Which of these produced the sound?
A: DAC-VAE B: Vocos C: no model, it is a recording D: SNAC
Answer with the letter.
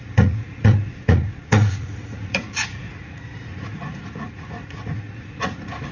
B